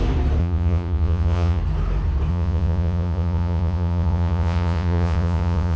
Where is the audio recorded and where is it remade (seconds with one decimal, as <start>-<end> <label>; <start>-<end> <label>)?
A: 0.0-0.4 recorded; 0.4-1.6 remade; 1.6-2.3 recorded; 2.3-5.8 remade